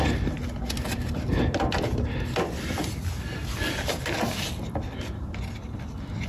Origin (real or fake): real